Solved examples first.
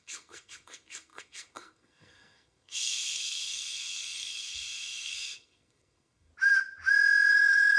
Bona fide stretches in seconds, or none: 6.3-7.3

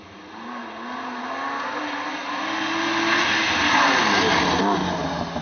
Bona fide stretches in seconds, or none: 0.0-5.4

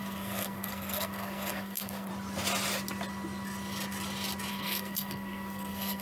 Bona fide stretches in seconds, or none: 2.1-4.5

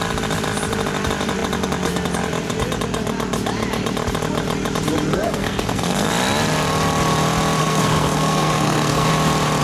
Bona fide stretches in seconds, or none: 0.0-5.1; 6.1-7.6; 9.1-9.6

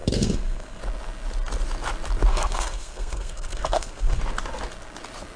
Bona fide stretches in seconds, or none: 0.8-2.3; 4.2-5.4